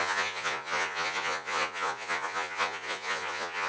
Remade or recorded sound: remade